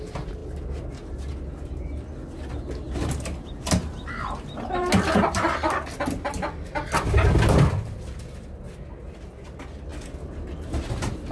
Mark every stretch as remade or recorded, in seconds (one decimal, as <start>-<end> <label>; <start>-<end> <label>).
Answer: 0.0-11.3 recorded